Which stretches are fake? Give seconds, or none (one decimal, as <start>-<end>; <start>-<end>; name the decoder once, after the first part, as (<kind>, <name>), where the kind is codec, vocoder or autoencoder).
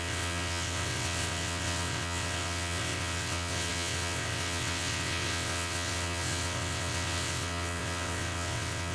0.0-8.9 (vocoder, WaveNeXt)